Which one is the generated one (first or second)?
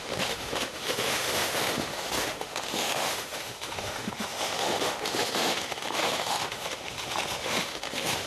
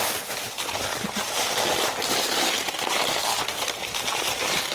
first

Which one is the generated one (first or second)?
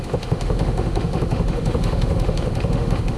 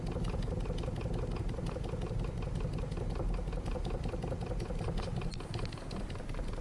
first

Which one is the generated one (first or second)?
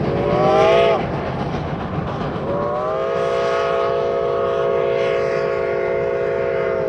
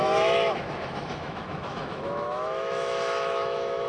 second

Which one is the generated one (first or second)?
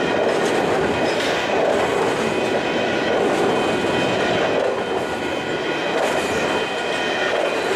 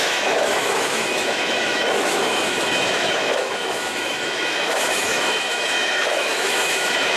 second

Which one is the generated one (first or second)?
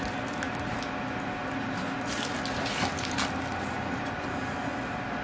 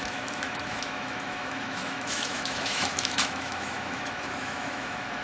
second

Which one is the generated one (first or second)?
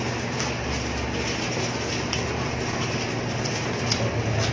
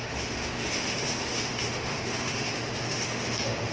second